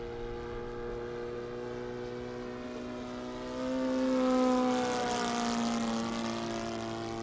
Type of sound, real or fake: real